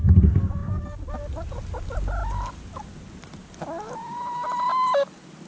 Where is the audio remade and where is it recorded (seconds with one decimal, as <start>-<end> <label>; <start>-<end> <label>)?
0.0-0.6 recorded; 0.6-1.1 remade; 1.1-5.5 recorded